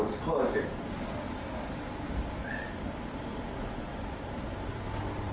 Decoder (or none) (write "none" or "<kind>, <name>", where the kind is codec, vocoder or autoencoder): none